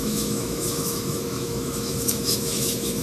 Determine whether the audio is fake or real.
fake